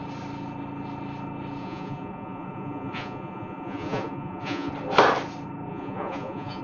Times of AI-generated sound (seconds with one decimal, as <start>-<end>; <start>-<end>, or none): 1.6-4.7; 5.7-6.6